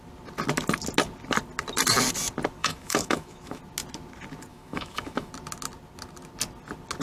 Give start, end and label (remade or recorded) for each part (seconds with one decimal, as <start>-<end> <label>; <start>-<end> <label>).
0.0-2.6 recorded; 2.6-3.6 remade; 3.6-4.5 recorded; 4.5-5.3 remade; 5.3-7.0 recorded